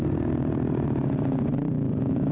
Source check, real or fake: real